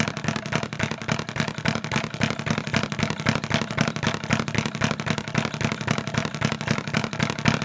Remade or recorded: recorded